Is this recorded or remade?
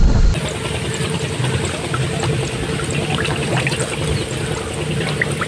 recorded